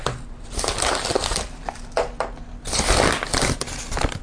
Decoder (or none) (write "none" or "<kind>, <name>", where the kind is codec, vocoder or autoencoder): none